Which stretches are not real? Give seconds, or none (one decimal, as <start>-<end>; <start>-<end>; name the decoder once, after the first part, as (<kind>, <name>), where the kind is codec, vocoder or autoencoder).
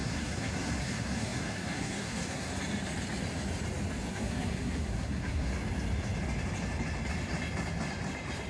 0.0-2.5 (codec, SNAC); 4.1-5.5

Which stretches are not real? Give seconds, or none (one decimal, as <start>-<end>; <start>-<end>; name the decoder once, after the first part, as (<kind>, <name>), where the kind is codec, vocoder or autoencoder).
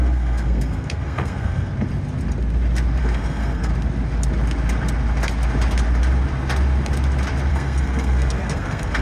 0.0-1.7 (codec, SNAC); 3.0-3.7; 7.5-9.0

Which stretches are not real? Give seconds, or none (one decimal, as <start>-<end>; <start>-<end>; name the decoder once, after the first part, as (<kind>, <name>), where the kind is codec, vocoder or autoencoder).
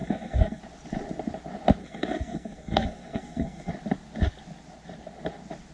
0.0-0.6 (codec, SNAC); 1.8-3.7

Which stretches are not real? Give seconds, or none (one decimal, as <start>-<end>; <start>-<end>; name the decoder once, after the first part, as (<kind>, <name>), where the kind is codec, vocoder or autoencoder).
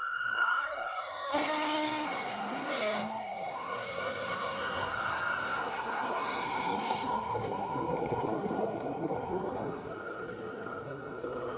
0.0-11.6 (codec, SNAC)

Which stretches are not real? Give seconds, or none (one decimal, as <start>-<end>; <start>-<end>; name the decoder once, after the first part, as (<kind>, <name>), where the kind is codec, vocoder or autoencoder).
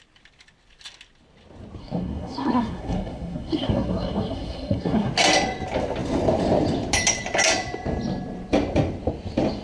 1.8-5.1 (codec, SNAC)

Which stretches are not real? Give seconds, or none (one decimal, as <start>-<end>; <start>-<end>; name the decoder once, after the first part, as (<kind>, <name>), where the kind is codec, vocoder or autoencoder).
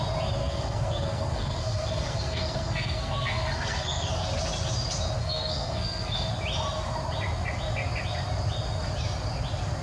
0.4-4.1 (codec, SNAC); 5.2-6.3